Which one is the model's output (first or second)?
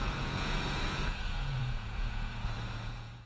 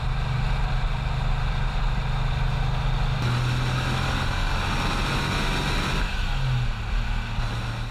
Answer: first